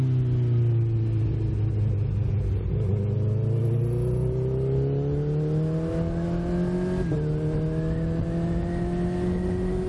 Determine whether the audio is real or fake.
real